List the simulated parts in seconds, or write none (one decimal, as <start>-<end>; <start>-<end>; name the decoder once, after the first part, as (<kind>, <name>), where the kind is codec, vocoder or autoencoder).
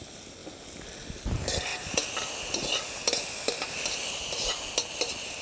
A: none